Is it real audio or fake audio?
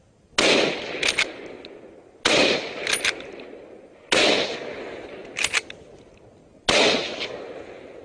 real